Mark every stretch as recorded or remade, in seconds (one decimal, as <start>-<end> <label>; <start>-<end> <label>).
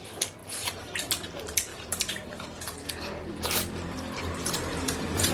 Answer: 0.0-0.4 recorded; 0.4-1.1 remade; 1.1-1.7 recorded; 1.7-2.6 remade; 2.6-5.3 recorded